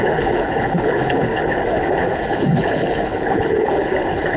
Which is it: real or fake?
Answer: fake